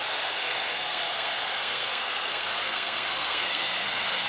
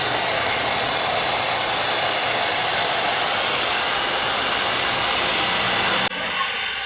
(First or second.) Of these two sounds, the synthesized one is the first